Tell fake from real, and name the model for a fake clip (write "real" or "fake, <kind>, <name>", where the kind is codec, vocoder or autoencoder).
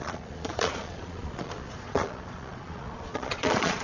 fake, vocoder, Vocos